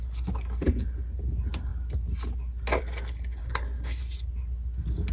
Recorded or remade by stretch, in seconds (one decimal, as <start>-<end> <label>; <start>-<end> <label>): 0.0-3.4 recorded; 3.4-4.0 remade; 4.0-5.1 recorded